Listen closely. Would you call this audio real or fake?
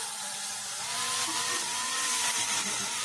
real